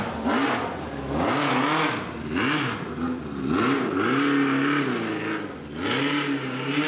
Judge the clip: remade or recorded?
recorded